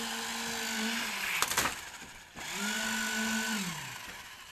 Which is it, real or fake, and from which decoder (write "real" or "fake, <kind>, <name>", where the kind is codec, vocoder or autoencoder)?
real